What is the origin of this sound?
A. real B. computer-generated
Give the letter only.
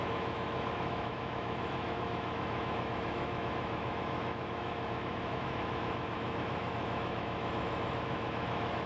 B